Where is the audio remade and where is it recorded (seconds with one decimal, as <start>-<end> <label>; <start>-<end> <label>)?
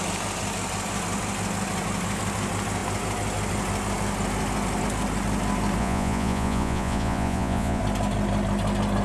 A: 0.0-5.8 recorded; 5.8-7.8 remade; 7.8-9.0 recorded